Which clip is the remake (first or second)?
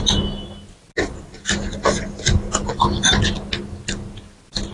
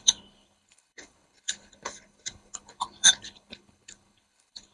second